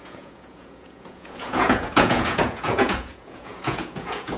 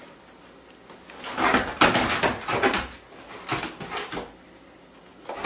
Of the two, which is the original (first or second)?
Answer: second